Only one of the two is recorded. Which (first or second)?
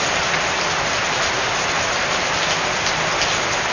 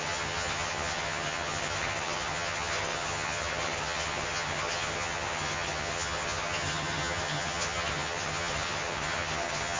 first